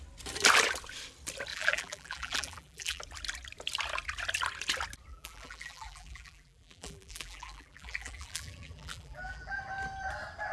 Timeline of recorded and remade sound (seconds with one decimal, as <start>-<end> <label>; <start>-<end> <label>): 0.0-1.5 recorded; 1.5-3.0 remade; 3.0-5.1 recorded; 5.1-9.6 remade; 9.6-10.5 recorded